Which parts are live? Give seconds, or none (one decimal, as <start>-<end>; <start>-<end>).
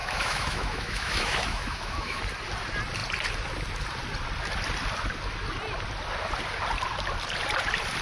2.2-8.0